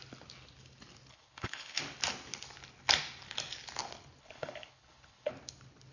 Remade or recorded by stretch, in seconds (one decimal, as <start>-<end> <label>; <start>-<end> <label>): 0.0-1.1 recorded; 1.1-1.8 remade; 1.8-4.2 recorded; 4.2-5.3 remade; 5.3-5.9 recorded